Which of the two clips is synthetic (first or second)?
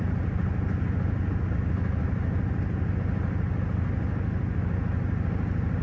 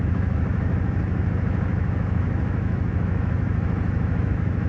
second